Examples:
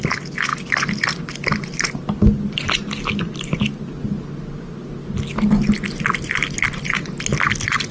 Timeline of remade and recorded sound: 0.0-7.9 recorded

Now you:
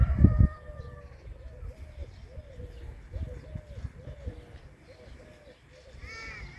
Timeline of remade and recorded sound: 0.0-2.0 remade; 2.0-5.8 recorded; 5.8-6.6 remade

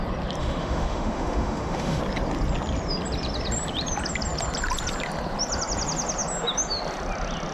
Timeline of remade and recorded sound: 0.0-0.4 recorded; 0.4-2.0 remade; 2.0-7.5 recorded

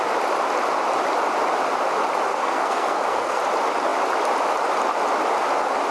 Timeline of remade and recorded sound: 0.0-2.3 recorded; 2.3-3.4 remade; 3.4-5.9 recorded

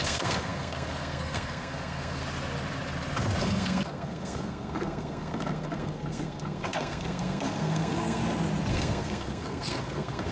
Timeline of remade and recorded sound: 0.0-2.2 remade; 2.2-3.4 recorded; 3.4-8.2 remade; 8.2-8.7 recorded; 8.7-10.3 remade

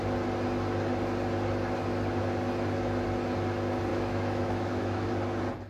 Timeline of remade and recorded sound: 0.0-3.9 recorded; 3.9-5.1 remade; 5.1-5.7 recorded